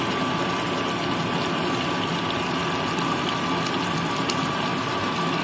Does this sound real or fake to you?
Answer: real